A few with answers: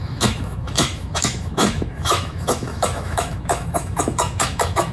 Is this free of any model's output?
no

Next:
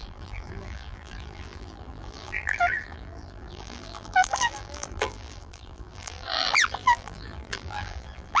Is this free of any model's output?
no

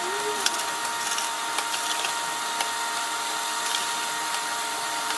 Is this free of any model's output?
no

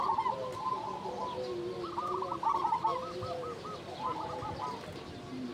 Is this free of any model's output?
yes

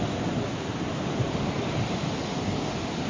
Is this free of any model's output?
yes